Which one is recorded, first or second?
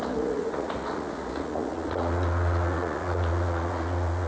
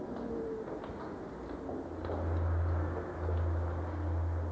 second